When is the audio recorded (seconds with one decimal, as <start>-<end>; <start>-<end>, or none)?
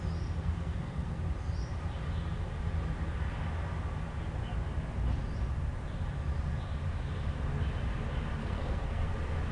0.0-0.4; 1.2-8.4; 9.1-9.5